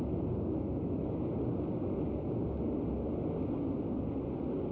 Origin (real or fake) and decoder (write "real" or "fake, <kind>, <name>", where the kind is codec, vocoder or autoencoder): real